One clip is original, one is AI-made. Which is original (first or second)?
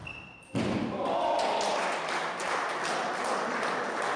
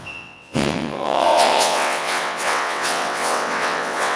first